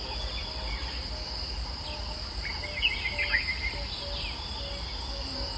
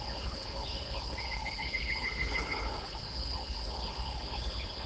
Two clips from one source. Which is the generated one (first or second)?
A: second